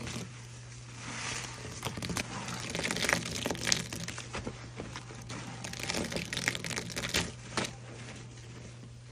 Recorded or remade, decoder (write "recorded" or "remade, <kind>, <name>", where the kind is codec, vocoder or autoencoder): recorded